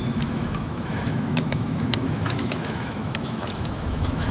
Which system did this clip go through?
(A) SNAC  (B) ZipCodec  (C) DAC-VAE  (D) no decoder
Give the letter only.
C